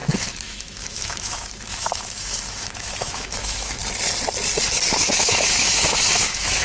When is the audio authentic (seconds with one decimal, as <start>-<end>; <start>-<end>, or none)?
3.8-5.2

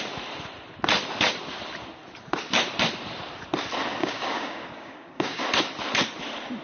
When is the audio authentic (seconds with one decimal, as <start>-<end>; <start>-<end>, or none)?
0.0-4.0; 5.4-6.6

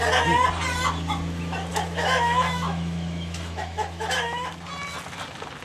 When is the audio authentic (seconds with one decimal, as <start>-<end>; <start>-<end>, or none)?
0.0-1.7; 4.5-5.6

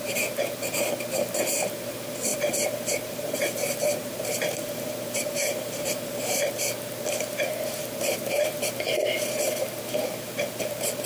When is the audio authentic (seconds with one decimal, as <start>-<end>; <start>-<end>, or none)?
0.0-2.3; 6.5-7.8; 8.6-11.1

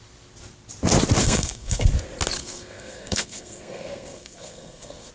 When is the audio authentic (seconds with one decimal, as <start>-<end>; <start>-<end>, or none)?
0.0-1.2; 1.9-2.4

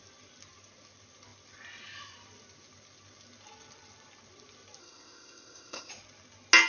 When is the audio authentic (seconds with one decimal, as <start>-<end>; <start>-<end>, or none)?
0.0-4.8; 5.9-6.7